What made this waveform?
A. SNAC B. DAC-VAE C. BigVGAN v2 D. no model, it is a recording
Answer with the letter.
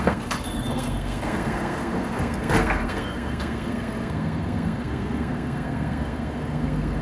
A